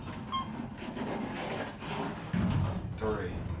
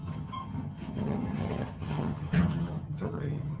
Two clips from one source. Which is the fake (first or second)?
second